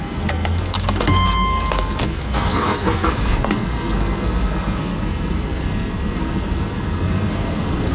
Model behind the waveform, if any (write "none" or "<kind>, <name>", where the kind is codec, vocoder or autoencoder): codec, SNAC